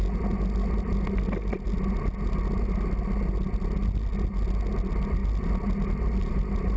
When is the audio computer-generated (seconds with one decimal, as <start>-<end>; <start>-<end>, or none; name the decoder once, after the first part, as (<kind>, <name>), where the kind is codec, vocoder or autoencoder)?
none